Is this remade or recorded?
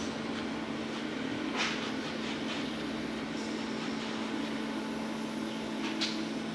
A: recorded